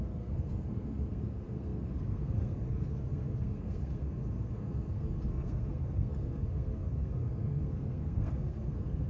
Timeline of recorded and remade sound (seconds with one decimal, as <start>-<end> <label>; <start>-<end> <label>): 0.0-9.1 remade